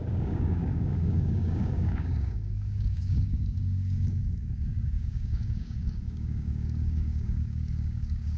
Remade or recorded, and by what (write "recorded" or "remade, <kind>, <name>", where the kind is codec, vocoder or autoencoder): remade, codec, DAC